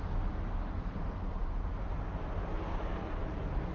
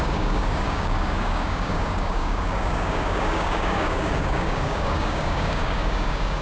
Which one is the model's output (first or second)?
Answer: second